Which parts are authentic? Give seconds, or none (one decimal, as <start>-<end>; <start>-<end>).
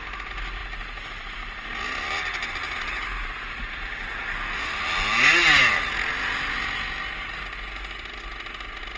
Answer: 0.0-9.0